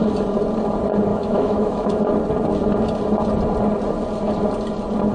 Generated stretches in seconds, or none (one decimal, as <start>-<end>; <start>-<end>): 1.1-2.0